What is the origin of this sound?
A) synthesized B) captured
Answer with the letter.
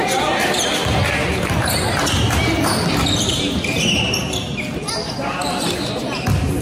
B